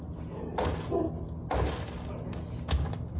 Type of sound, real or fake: real